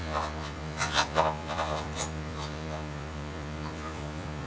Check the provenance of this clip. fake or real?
fake